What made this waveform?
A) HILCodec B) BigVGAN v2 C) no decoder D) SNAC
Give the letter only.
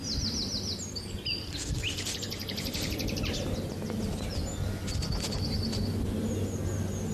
C